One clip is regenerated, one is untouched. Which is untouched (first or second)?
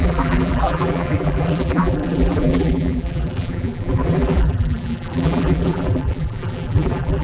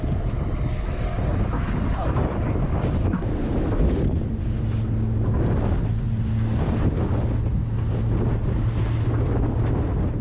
second